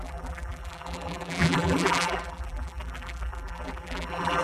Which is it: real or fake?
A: fake